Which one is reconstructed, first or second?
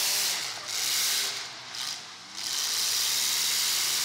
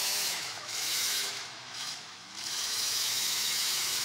second